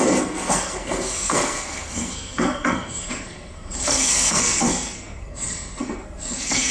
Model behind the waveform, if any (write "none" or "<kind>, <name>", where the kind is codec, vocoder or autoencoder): codec, SNAC